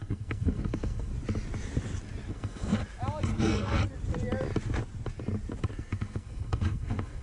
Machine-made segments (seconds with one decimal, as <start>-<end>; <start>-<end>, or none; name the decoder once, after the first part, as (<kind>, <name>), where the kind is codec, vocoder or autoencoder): 0.0-1.1 (codec, SNAC); 2.3-2.8; 3.4-3.8; 5.7-7.2